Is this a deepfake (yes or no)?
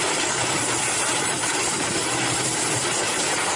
no